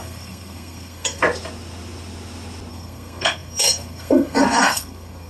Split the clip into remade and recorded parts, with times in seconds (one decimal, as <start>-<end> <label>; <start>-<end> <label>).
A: 0.0-1.2 remade; 1.2-2.7 recorded; 2.7-5.3 remade